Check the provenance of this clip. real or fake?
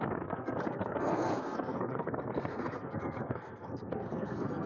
fake